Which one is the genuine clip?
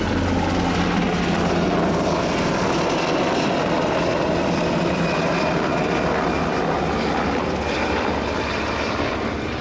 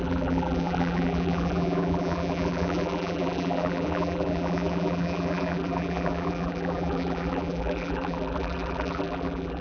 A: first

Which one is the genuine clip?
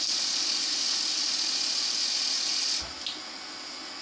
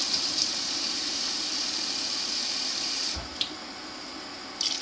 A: first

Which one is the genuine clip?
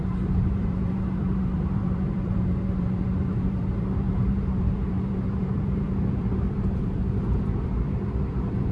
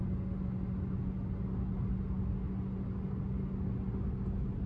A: second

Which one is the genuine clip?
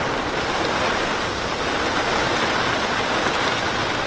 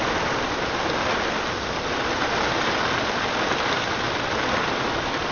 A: second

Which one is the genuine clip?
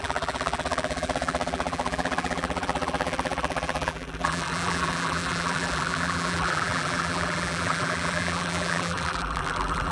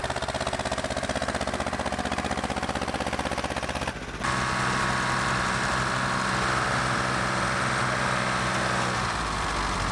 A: second